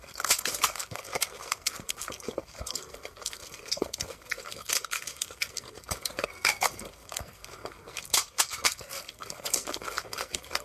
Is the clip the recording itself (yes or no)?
no